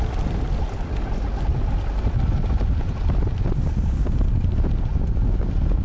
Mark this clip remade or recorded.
recorded